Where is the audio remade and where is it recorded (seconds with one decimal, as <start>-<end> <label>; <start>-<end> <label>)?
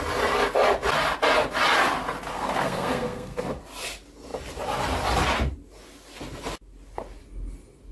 0.0-2.3 recorded; 2.3-3.6 remade; 3.6-7.9 recorded